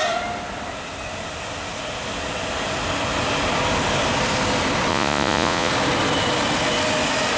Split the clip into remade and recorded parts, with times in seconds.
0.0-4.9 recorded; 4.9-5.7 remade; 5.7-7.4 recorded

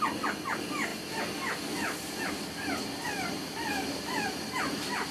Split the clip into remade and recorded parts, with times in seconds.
0.0-5.1 recorded

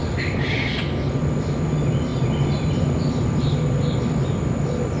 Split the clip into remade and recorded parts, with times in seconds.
0.0-5.0 recorded